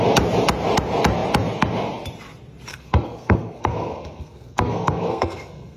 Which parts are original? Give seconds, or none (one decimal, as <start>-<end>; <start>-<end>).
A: 0.0-2.7